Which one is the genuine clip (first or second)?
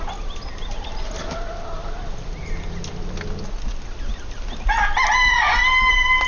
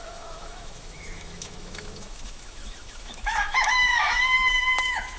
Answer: first